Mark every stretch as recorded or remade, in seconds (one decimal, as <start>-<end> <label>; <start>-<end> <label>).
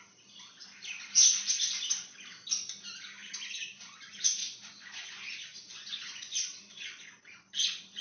0.0-3.2 recorded; 3.2-8.0 remade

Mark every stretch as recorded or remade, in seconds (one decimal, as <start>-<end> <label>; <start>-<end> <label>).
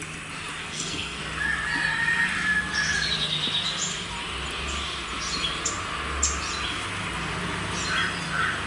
0.0-0.6 recorded; 0.6-1.2 remade; 1.2-8.7 recorded